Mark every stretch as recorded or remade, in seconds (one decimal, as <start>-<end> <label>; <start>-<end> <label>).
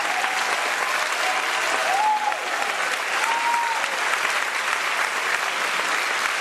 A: 0.0-6.4 recorded